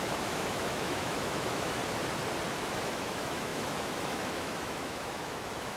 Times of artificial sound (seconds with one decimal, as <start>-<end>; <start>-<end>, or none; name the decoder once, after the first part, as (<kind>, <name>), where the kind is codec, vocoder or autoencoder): 0.0-1.8 (autoencoder, DAC-VAE); 2.6-5.8